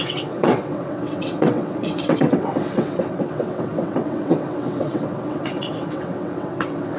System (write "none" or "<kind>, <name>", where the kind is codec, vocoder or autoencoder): vocoder, WaveNeXt